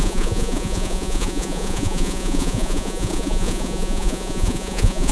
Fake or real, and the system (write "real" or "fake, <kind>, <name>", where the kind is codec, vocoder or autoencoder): fake, vocoder, Vocos